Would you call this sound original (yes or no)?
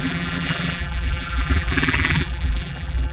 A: no